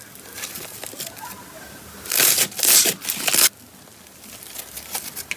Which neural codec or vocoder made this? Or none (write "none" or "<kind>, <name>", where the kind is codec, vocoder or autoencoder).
none